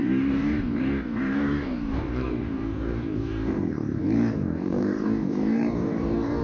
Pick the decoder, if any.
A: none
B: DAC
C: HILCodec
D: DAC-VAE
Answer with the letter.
B